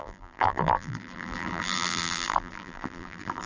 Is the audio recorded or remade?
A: remade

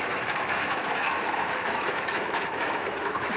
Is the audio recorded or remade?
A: remade